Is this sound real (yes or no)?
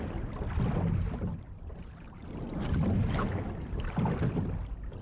yes